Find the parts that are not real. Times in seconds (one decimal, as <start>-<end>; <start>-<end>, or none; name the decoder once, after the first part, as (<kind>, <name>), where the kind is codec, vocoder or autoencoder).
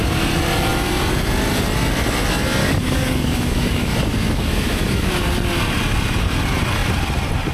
2.6-5.1 (codec, DAC)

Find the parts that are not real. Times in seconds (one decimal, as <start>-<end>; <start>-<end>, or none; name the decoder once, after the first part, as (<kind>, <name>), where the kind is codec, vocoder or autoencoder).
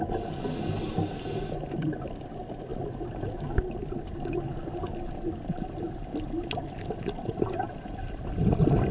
none